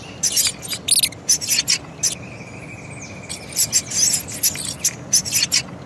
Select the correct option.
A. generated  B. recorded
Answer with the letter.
B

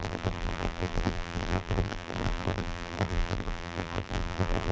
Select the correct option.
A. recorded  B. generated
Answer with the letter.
B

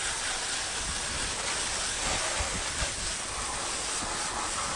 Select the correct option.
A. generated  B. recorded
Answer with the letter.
B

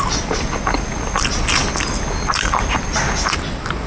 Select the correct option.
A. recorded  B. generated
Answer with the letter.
A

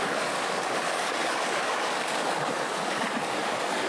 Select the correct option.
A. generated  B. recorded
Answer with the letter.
A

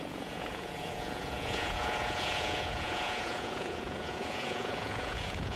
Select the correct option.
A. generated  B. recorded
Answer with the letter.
A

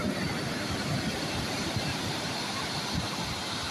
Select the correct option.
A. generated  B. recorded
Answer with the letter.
A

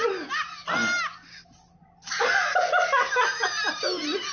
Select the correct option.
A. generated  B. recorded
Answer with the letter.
B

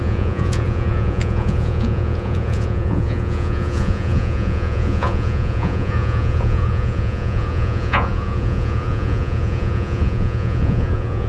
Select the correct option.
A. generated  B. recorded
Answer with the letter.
A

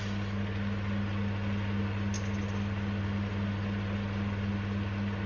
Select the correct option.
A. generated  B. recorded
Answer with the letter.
B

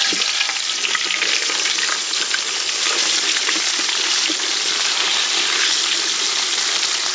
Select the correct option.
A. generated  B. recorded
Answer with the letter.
B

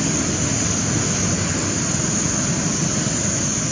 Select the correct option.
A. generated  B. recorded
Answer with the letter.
B